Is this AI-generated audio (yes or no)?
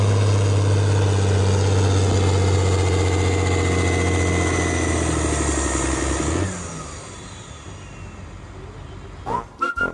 no